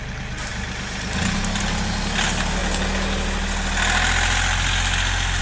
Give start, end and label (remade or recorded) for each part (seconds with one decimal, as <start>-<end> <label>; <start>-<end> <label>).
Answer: 0.0-5.4 recorded